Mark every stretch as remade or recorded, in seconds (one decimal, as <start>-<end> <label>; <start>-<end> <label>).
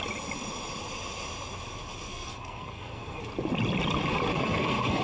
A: 0.0-2.1 recorded; 2.1-3.2 remade; 3.2-4.3 recorded; 4.3-5.0 remade